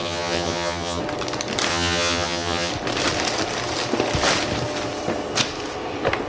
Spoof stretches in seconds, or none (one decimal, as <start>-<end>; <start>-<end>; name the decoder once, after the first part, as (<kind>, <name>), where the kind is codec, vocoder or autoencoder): 0.0-1.0 (vocoder, HiFi-GAN); 1.7-2.7